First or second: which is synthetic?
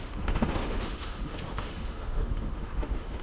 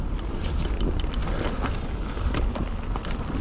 first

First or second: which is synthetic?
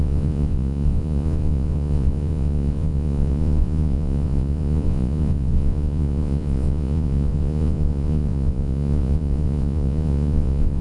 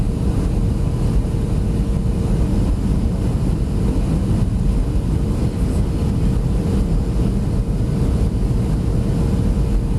first